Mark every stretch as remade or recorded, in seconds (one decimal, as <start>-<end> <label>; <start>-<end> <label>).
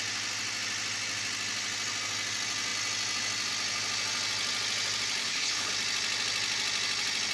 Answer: 0.0-5.2 recorded; 5.2-5.7 remade; 5.7-7.3 recorded